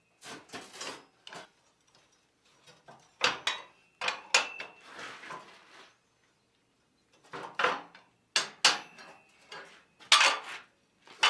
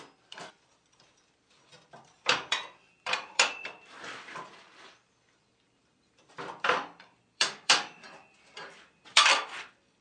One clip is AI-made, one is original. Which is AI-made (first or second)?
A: second